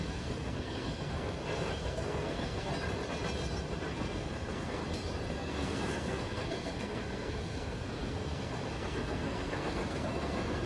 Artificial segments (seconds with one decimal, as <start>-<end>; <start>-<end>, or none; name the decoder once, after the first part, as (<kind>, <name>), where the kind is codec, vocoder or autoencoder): 0.0-2.7 (codec, SNAC); 3.9-4.8; 5.3-10.7